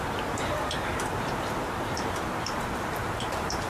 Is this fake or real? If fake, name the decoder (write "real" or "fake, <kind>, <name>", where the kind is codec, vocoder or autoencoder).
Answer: fake, vocoder, BigVGAN v2